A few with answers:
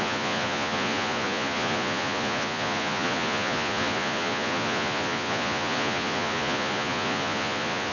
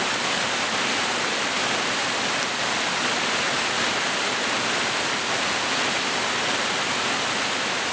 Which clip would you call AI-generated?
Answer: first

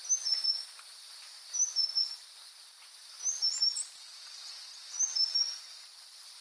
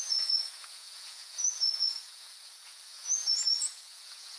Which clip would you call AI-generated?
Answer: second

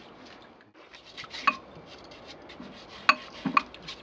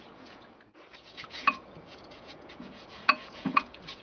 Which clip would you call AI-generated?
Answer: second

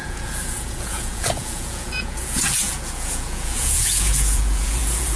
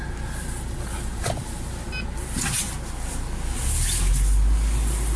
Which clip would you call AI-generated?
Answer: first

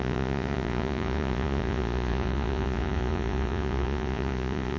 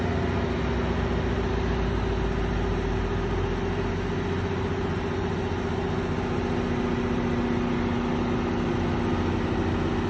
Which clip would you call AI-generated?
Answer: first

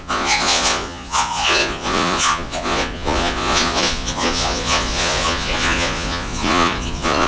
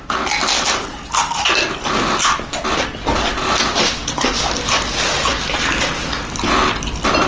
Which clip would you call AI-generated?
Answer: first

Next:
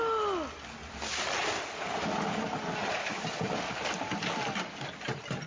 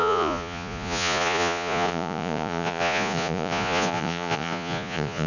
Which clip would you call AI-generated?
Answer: second